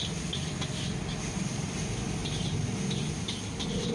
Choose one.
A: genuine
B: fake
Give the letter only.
A